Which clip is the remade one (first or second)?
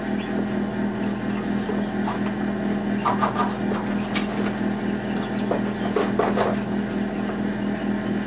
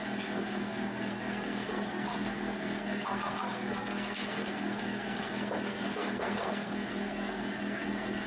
second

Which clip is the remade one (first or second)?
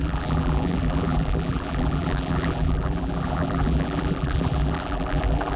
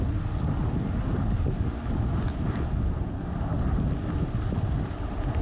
first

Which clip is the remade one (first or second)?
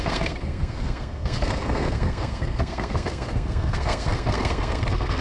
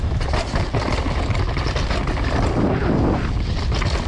first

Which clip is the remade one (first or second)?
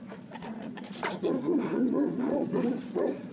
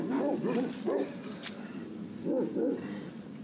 first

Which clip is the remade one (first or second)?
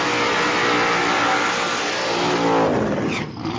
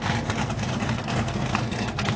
second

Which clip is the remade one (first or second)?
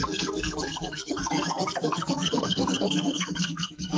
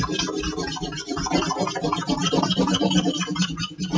first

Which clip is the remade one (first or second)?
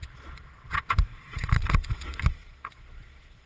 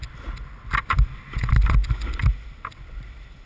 first